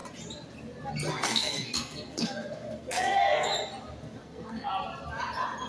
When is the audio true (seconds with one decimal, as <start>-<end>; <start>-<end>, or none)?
0.0-1.1; 3.5-4.2; 4.7-5.7